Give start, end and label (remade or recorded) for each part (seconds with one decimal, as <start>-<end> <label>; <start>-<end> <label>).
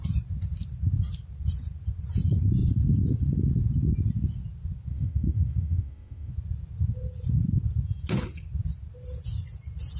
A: 0.0-4.9 recorded; 4.9-6.3 remade; 6.3-10.0 recorded